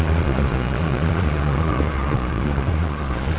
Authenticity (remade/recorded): remade